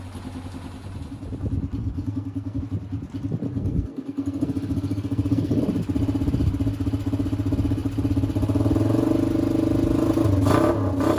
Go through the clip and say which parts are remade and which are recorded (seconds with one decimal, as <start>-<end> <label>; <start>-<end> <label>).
0.0-1.8 recorded; 1.8-2.6 remade; 2.6-3.5 recorded; 3.5-5.6 remade; 5.6-11.2 recorded